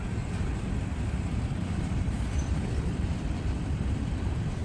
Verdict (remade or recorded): remade